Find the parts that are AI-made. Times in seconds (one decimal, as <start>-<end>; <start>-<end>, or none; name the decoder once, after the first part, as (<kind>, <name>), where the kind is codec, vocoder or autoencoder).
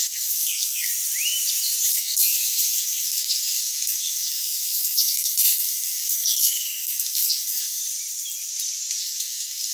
0.0-0.9 (codec, SNAC); 1.9-7.8; 9.0-9.7